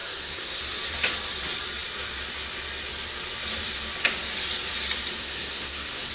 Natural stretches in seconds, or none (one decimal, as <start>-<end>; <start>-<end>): 0.6-5.2